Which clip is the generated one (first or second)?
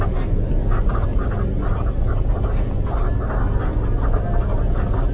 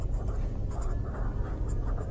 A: second